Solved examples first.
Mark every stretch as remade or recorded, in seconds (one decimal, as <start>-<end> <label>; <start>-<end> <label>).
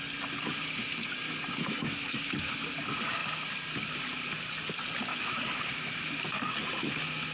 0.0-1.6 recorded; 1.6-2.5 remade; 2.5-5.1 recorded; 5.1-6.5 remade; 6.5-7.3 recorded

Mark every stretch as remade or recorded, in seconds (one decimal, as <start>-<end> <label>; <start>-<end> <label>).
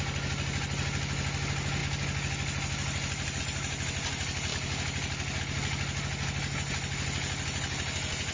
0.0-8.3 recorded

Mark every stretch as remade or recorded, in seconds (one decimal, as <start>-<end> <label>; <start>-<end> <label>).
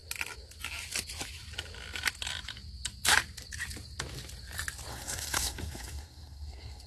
0.0-4.9 recorded; 4.9-6.9 remade